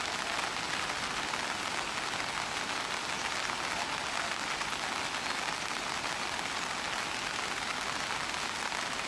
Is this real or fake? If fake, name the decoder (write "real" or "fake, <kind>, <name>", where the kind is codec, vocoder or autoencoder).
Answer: real